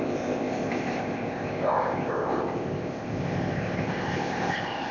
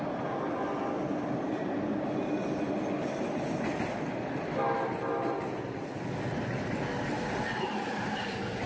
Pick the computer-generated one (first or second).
first